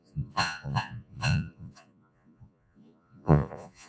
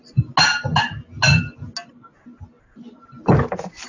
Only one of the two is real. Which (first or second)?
second